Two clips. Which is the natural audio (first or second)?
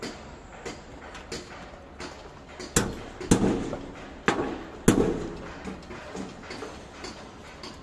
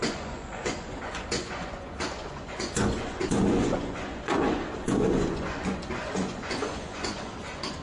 first